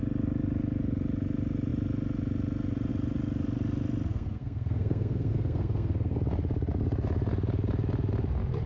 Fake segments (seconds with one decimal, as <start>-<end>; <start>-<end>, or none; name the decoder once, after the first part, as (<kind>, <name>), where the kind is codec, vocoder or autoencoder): 4.1-6.2 (codec, SNAC)